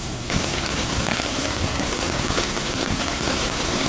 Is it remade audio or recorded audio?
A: remade